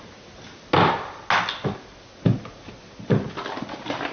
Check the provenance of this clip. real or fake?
real